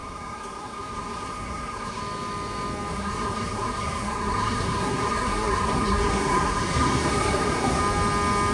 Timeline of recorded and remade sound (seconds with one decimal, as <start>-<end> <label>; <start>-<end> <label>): 0.0-2.0 remade; 2.0-2.9 recorded; 2.9-7.8 remade; 7.8-8.5 recorded